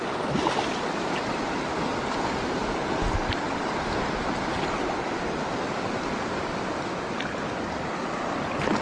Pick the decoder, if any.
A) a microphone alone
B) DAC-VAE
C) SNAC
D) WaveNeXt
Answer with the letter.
A